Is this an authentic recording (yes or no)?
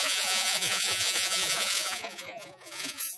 no